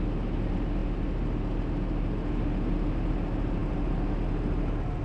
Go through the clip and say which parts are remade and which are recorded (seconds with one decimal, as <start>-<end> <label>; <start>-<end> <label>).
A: 0.0-5.0 recorded